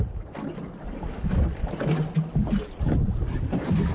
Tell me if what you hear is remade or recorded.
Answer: recorded